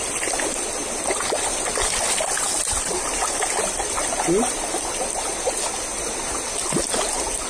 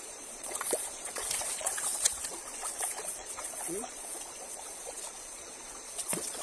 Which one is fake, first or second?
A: second